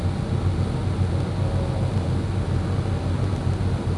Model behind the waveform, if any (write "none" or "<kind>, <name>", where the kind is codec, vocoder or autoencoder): none